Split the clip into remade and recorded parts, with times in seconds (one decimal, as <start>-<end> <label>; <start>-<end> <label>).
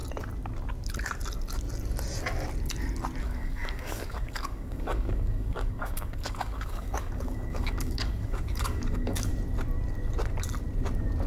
0.0-3.2 recorded; 3.2-9.3 remade; 9.3-11.3 recorded